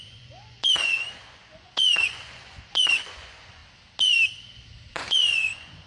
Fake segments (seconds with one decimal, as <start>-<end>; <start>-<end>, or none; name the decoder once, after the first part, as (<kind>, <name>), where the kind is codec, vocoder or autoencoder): 0.0-3.6 (vocoder, Vocos); 4.9-5.9